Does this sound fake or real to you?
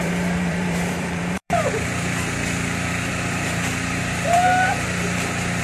fake